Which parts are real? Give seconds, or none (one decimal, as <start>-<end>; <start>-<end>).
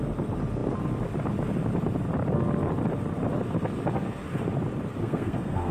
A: 0.0-5.0